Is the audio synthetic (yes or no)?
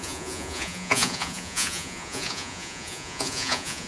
yes